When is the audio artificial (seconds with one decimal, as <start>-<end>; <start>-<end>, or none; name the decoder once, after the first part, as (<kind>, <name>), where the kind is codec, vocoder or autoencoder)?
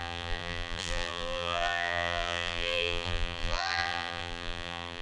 0.0-5.0 (vocoder, BigVGAN v2)